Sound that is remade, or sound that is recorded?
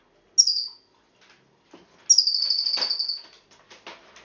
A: recorded